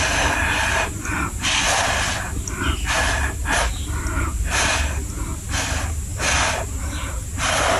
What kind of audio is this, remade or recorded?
recorded